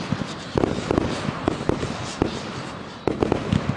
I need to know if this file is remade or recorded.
remade